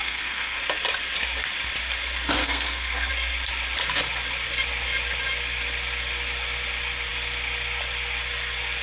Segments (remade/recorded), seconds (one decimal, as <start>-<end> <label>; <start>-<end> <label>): 0.0-0.6 remade; 0.6-2.4 recorded; 2.4-3.1 remade; 3.1-8.8 recorded